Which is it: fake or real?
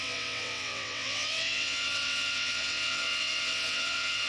fake